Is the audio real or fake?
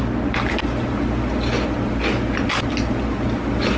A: real